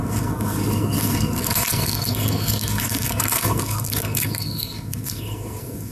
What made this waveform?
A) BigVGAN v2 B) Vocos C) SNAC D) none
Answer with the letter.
C